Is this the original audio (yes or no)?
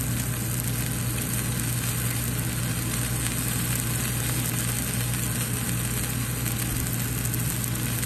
yes